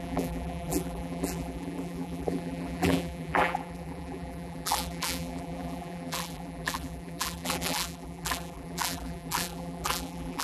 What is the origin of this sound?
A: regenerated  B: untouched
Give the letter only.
A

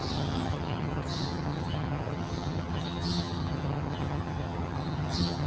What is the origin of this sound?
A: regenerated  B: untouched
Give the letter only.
A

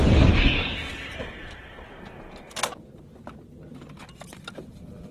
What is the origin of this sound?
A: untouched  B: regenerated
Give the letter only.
A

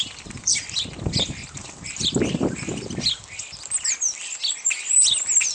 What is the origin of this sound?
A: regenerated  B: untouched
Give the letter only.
B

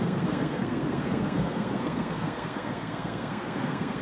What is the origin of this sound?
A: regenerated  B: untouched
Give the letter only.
A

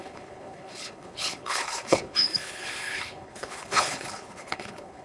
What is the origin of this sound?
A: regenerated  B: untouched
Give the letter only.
A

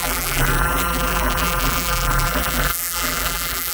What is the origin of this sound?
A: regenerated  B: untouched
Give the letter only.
A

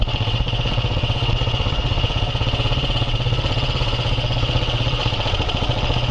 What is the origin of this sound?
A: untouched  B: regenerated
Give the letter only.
B